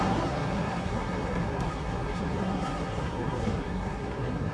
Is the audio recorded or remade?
remade